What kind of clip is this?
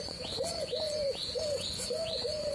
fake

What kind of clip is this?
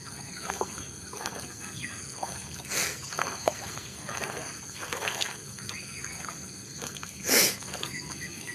fake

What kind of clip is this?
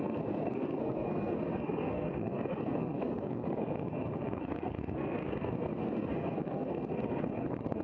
fake